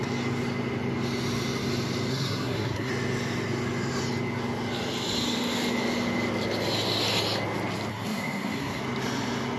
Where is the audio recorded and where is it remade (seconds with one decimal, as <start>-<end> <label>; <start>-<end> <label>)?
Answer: 0.0-2.1 recorded; 2.1-2.9 remade; 2.9-7.9 recorded; 7.9-8.8 remade; 8.8-9.6 recorded